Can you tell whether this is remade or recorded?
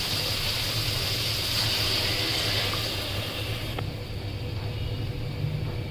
recorded